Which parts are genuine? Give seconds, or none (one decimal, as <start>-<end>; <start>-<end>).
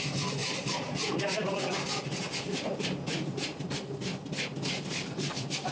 0.0-5.7